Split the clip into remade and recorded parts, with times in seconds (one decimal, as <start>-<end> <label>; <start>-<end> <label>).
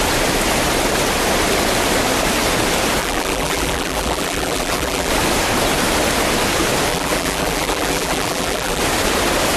0.0-3.0 recorded; 3.0-5.1 remade; 5.1-6.9 recorded; 6.9-8.8 remade; 8.8-9.6 recorded